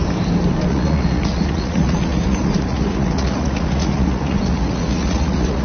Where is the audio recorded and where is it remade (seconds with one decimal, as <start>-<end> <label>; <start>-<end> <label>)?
0.0-0.7 recorded; 0.7-5.6 remade